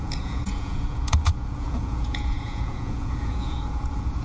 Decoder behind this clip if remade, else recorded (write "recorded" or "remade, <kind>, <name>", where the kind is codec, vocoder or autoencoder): remade, vocoder, Vocos